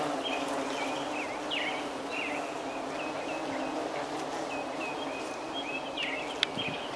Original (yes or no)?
yes